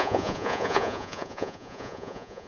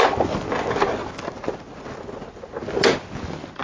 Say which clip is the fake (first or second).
first